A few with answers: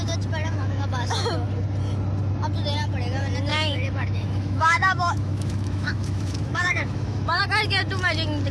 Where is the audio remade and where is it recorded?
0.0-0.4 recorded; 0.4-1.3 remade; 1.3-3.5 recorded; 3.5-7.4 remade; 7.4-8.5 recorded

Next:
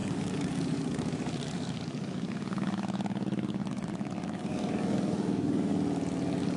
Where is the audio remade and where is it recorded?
0.0-5.7 remade; 5.7-6.6 recorded

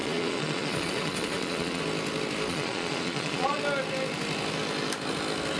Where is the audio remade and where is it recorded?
0.0-1.8 remade; 1.8-2.5 recorded; 2.5-3.6 remade; 3.6-5.6 recorded